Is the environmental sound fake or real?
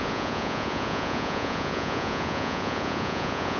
fake